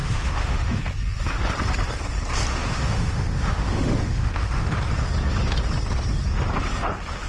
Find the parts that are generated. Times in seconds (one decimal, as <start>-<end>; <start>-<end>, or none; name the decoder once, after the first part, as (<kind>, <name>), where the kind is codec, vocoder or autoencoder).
0.0-0.8 (autoencoder, DAC-VAE); 2.5-4.8